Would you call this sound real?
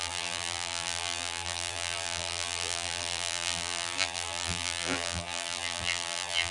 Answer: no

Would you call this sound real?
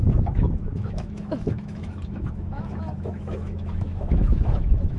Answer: no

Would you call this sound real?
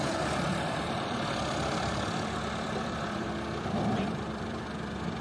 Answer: no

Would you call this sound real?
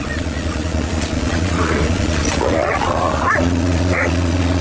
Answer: no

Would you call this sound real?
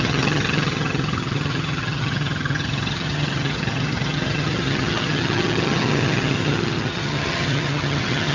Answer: no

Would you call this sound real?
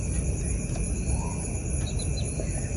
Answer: yes